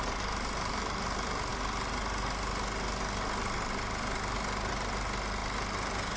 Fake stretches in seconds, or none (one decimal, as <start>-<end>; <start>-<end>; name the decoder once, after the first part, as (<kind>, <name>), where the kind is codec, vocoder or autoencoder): none